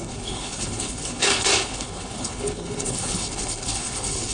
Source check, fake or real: fake